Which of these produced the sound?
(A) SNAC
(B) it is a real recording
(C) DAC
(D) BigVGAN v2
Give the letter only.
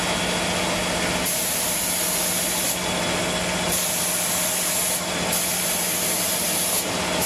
B